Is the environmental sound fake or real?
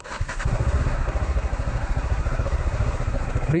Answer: fake